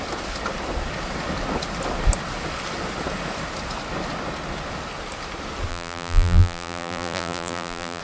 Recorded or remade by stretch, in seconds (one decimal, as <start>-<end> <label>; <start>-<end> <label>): 0.0-5.7 recorded; 5.7-8.0 remade